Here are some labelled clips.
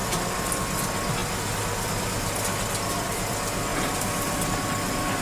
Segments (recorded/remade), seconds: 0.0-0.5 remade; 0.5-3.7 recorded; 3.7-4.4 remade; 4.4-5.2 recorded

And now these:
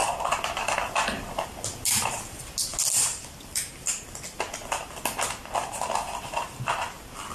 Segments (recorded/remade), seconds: 0.0-7.3 recorded

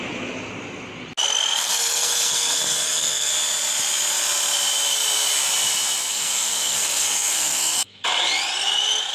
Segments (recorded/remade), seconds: 0.0-1.6 recorded; 1.6-3.3 remade; 3.3-6.1 recorded; 6.1-8.0 remade; 8.0-9.1 recorded

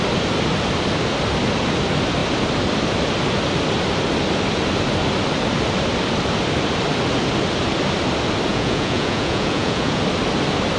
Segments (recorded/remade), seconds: 0.0-8.5 recorded; 8.5-10.0 remade; 10.0-10.8 recorded